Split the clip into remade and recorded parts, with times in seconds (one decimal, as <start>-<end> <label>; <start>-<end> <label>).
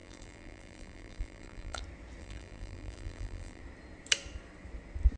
0.0-1.8 remade; 1.8-2.2 recorded; 2.2-3.6 remade; 3.6-5.2 recorded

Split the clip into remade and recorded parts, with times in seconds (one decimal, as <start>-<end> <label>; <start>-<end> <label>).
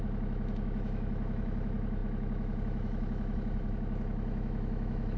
0.0-5.2 remade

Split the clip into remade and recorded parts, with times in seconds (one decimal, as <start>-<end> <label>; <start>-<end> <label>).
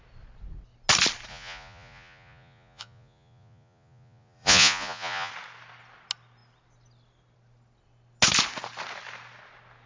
0.0-1.3 recorded; 1.3-5.3 remade; 5.3-9.9 recorded